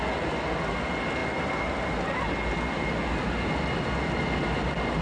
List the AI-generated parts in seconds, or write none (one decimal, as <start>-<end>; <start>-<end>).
none